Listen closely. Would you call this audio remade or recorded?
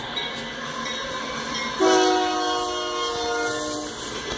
recorded